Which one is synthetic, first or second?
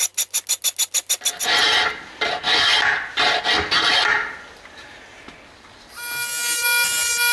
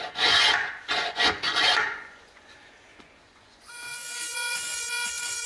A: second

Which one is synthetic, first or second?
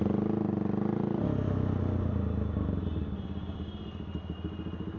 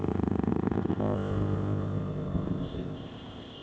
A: second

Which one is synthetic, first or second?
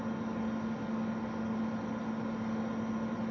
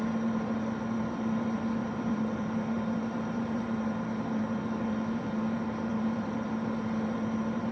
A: second